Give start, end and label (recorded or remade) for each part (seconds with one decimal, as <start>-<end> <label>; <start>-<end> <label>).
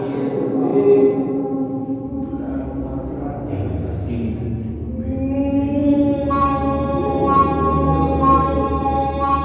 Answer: 0.0-9.4 recorded